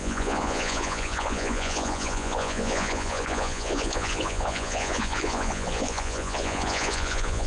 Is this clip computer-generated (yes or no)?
yes